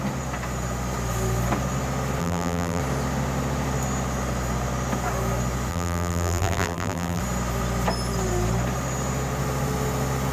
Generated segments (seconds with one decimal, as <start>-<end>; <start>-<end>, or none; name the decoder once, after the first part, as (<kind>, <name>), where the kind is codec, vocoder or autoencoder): 2.2-2.8 (vocoder, BigVGAN v2); 5.7-7.2